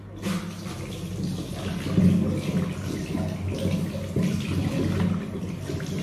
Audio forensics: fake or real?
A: real